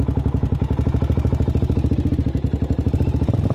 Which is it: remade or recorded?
recorded